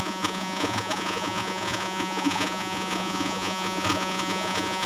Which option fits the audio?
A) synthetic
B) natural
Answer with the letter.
A